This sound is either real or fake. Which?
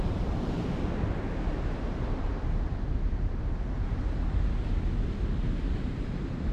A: real